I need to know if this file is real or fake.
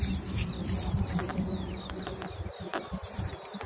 fake